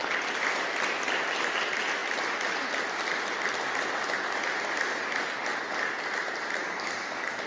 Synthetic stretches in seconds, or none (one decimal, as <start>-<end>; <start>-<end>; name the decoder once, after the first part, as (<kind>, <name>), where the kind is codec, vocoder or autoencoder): 6.6-7.5 (codec, DAC)

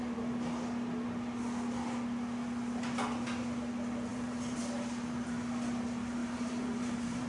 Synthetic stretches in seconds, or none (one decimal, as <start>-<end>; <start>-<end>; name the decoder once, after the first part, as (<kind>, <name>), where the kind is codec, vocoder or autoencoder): 4.1-4.6 (vocoder, BigVGAN v2); 6.2-7.3

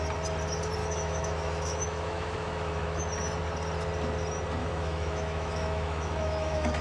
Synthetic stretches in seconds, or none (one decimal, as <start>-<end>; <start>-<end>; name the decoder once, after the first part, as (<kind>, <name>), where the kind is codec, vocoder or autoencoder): 0.8-3.0 (autoencoder, DAC-VAE); 4.6-6.8

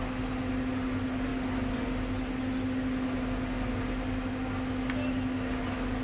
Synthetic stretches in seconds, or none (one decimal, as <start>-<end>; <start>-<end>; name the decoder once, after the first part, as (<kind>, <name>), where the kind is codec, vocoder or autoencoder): none

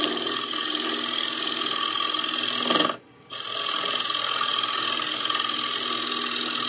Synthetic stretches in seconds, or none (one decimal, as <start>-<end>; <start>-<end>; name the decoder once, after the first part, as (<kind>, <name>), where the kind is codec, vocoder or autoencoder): none

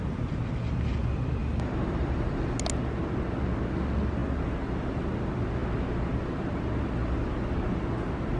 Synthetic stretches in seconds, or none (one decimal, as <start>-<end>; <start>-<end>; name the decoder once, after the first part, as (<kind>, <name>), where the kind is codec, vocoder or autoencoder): 1.4-2.4 (vocoder, BigVGAN v2)

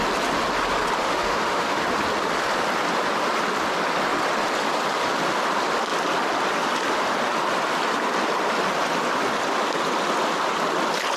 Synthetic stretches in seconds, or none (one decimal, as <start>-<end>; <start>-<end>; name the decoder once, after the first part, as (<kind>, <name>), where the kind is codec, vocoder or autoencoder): 1.0-1.8 (autoencoder, DAC-VAE)